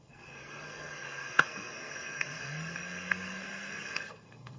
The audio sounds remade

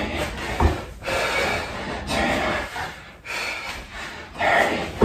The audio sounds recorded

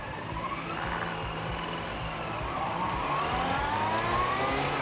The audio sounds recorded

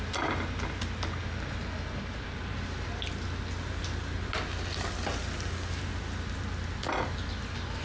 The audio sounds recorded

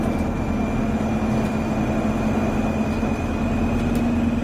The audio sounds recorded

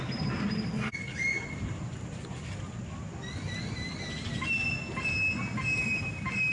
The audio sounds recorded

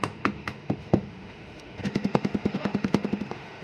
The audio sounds remade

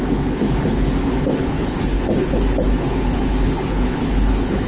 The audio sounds remade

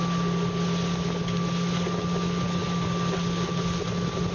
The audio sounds recorded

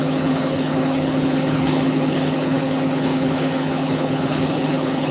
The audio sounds remade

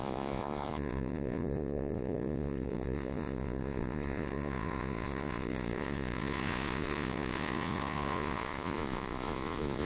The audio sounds remade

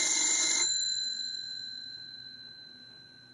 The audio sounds remade